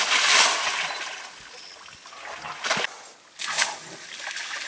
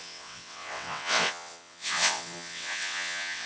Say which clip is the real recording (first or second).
first